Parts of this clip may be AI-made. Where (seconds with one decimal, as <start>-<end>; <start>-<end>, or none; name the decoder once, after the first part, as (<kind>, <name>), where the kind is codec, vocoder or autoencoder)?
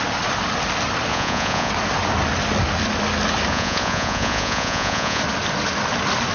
1.1-1.7 (vocoder, Vocos); 3.5-5.2